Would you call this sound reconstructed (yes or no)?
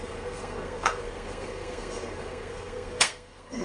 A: yes